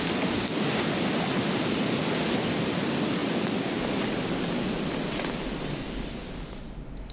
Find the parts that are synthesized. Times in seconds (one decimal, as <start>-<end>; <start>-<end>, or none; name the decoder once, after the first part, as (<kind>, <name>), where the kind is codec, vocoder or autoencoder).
none